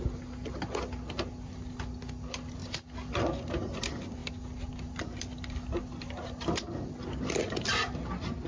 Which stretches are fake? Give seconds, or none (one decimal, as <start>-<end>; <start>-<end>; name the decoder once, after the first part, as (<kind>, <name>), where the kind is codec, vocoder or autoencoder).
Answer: none